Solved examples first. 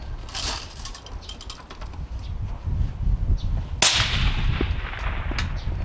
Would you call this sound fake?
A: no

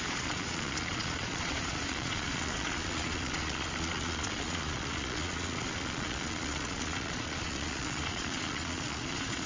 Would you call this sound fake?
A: yes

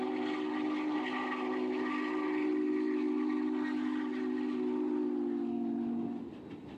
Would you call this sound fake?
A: no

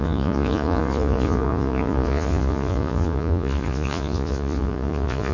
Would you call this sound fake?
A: yes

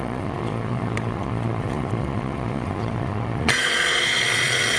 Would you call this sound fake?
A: yes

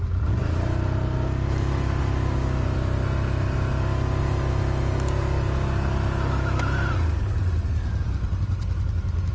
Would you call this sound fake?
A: no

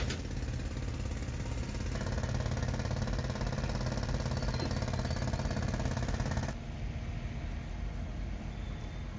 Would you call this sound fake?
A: no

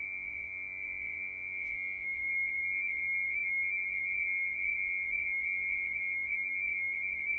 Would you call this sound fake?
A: yes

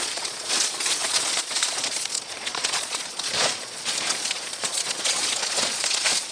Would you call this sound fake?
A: yes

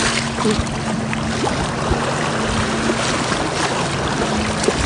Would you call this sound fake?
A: no